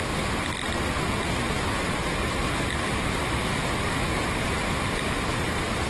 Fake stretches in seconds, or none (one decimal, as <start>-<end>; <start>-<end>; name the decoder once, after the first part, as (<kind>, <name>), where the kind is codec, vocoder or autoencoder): 5.3-5.9 (vocoder, BigVGAN v2)